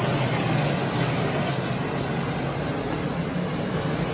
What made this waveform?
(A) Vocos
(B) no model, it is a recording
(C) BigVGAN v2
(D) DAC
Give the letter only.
B